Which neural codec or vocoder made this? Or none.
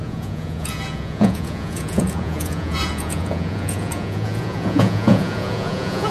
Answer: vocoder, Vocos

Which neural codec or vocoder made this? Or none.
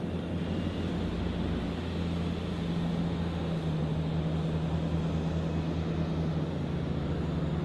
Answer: none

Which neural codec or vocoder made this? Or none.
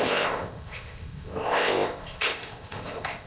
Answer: codec, ZipCodec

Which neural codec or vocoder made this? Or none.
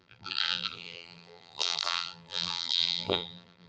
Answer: vocoder, BigVGAN v2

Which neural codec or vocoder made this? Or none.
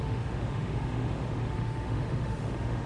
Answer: autoencoder, DAC-VAE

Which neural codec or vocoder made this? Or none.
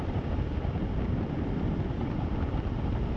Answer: vocoder, BigVGAN v2